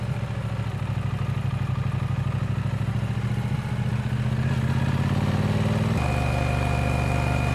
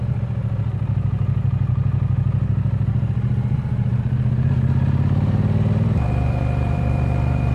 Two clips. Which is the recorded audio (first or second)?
first